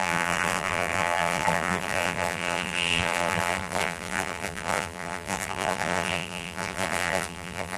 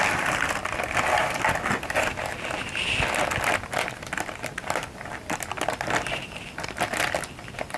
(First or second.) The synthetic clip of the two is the first